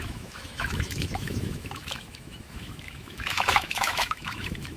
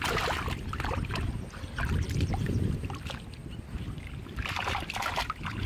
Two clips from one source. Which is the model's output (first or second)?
first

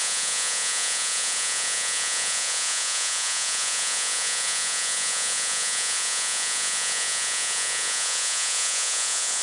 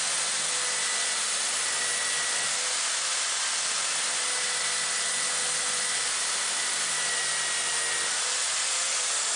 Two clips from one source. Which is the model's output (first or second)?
first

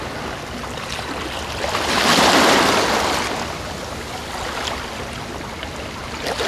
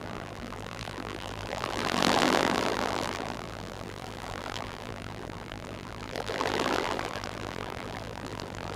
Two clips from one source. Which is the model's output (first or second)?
second